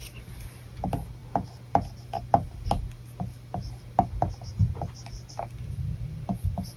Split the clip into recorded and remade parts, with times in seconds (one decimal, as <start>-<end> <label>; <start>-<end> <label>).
0.0-6.8 recorded